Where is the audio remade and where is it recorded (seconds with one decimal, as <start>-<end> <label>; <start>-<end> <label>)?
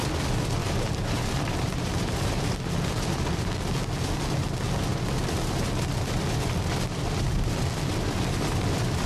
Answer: 0.0-0.6 recorded; 0.6-2.4 remade; 2.4-9.1 recorded